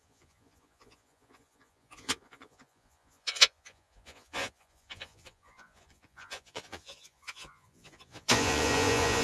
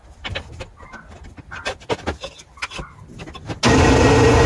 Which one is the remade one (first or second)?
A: first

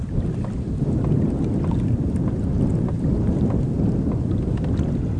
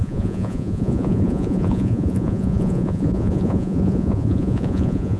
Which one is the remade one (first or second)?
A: second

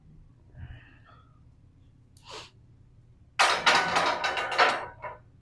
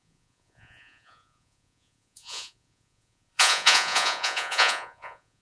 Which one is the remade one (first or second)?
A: second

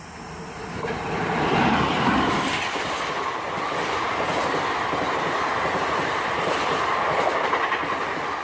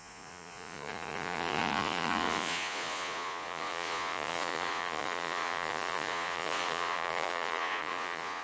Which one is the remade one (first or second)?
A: second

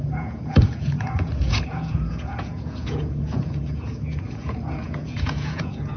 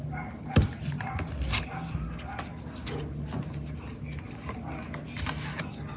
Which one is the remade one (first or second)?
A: first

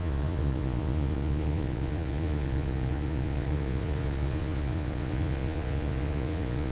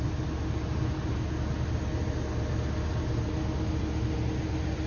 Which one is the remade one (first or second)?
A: first